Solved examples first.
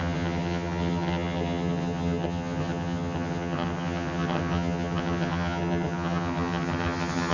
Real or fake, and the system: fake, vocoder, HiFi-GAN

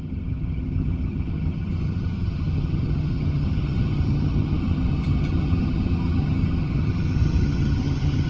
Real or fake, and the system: fake, vocoder, HiFi-GAN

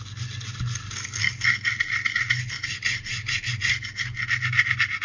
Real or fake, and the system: real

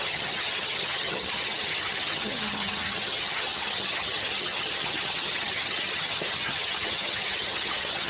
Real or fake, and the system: fake, vocoder, HiFi-GAN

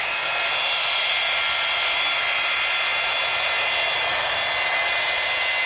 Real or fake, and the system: real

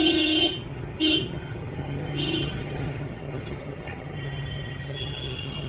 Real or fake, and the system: fake, vocoder, HiFi-GAN